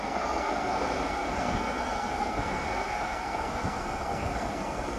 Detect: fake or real fake